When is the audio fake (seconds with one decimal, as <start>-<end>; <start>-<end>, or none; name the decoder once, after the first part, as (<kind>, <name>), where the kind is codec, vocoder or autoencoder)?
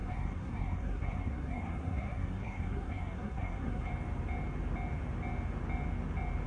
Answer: 0.0-3.9 (codec, SNAC)